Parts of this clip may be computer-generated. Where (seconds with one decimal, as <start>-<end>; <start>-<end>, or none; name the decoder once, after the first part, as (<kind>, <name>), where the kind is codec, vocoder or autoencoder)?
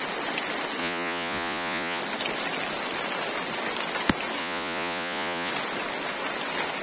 0.8-2.0 (vocoder, Vocos); 4.4-5.5